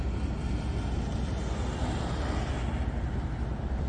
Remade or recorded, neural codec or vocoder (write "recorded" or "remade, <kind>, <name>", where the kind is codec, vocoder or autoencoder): recorded